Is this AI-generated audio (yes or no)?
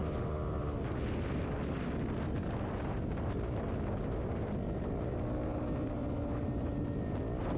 no